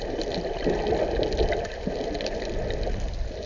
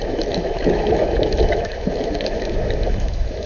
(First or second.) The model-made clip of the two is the second